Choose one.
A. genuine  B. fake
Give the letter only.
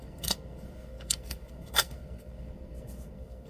B